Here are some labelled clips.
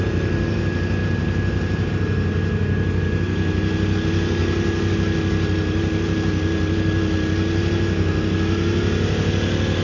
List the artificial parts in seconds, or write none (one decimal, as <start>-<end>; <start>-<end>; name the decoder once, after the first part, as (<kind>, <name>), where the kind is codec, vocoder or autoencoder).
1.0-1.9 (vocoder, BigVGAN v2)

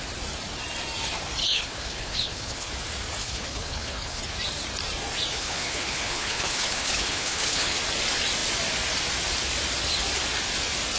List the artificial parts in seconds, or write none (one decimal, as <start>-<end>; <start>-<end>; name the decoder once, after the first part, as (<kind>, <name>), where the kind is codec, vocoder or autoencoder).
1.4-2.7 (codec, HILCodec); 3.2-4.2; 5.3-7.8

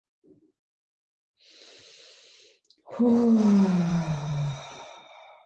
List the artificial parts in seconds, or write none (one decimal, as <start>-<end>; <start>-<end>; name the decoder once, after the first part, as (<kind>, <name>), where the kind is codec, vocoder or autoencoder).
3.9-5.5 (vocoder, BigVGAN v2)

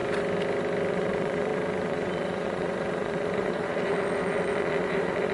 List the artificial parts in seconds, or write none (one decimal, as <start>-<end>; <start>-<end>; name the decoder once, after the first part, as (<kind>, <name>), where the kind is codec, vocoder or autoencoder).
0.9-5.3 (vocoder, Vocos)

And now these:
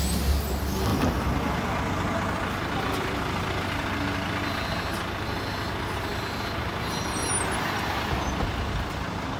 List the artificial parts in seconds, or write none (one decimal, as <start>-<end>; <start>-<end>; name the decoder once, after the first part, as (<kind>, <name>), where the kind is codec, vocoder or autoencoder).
none